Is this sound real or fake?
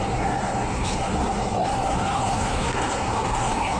fake